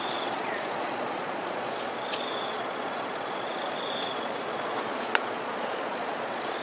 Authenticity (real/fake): fake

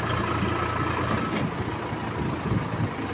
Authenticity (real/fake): real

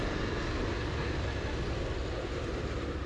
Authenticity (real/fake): real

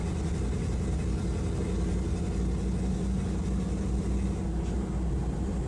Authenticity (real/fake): real